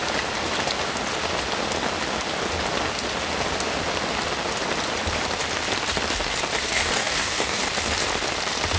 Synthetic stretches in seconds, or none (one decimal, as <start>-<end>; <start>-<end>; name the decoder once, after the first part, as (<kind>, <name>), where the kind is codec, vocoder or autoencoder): 6.6-7.6 (codec, DAC)